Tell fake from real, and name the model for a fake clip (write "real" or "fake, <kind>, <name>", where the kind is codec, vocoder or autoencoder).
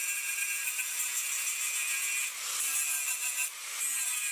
real